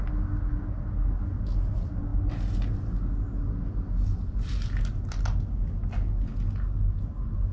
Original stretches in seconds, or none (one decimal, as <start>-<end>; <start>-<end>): 0.0-7.5